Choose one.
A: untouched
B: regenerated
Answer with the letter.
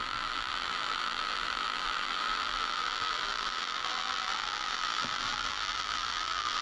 B